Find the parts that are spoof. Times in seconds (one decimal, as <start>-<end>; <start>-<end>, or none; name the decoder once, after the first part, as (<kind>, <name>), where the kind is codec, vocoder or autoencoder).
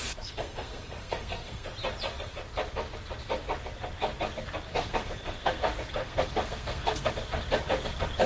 0.0-1.7 (codec, SNAC); 4.7-5.6; 6.0-7.1